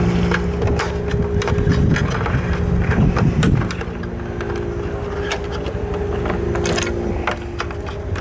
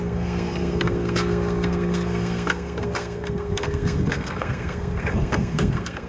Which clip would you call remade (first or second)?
second